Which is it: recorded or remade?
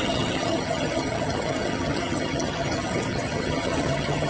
remade